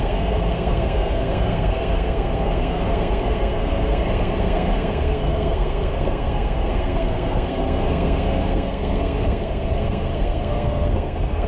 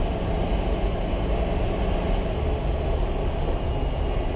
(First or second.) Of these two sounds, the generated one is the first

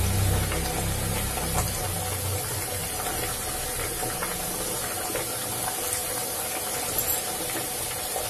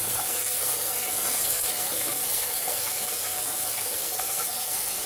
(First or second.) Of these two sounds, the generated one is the second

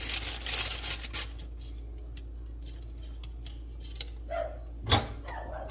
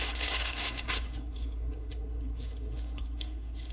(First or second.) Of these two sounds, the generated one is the second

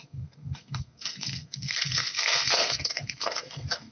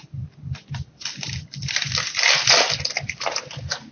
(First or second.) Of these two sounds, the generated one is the first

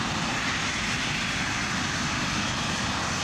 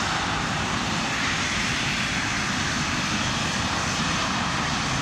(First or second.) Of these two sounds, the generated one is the second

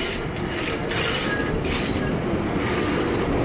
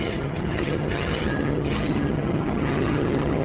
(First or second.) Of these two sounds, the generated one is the second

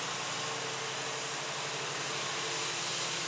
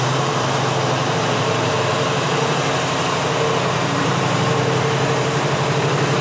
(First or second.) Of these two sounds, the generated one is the second